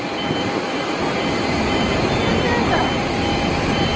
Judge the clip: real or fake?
real